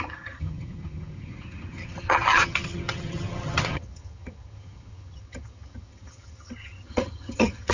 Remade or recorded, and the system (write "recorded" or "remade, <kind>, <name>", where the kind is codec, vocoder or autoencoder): remade, vocoder, HiFi-GAN